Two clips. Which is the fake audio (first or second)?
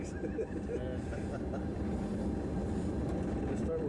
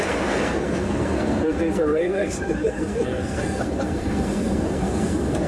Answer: second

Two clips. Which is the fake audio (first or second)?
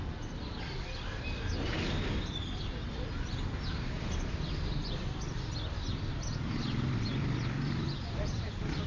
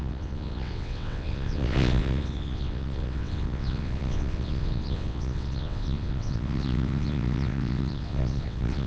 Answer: second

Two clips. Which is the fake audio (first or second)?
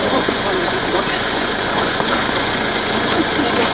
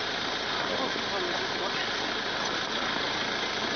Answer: first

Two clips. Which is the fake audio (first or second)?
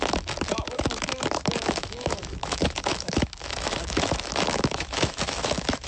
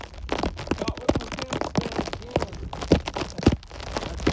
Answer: first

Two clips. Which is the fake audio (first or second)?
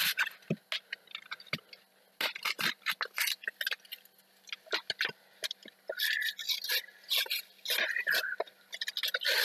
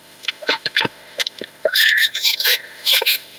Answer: second